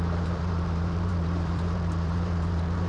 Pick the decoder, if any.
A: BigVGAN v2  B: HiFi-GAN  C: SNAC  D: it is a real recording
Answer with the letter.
A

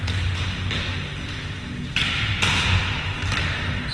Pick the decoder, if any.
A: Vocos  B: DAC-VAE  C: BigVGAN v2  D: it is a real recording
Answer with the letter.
D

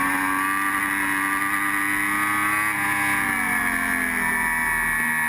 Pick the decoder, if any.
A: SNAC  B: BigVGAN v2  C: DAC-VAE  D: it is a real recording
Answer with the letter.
D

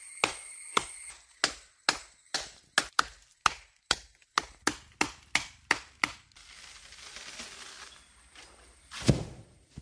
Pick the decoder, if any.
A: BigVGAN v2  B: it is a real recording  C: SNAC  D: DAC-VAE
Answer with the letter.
B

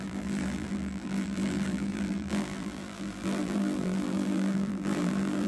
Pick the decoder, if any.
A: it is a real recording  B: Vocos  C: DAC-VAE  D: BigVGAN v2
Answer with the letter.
D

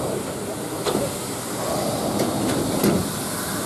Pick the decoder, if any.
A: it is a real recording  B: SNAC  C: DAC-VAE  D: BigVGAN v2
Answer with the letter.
A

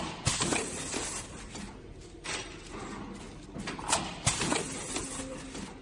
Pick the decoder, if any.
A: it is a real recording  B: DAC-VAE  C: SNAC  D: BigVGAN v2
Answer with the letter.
A